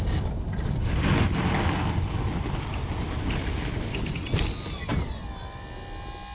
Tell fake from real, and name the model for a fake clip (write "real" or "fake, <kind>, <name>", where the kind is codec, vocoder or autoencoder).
real